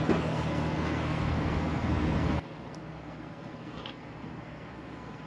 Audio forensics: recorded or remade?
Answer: remade